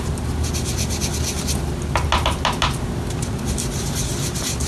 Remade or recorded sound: recorded